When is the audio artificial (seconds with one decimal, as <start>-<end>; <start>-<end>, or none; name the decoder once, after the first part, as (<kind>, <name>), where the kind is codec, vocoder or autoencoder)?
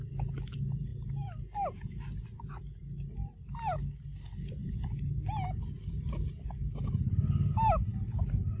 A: none